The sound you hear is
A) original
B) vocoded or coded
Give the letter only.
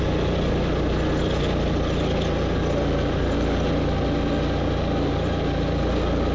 A